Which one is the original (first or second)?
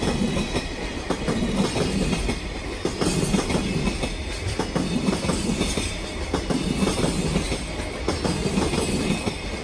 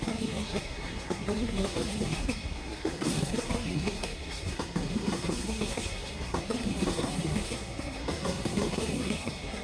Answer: first